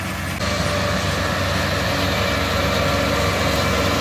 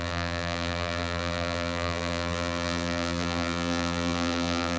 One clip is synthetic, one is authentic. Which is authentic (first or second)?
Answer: first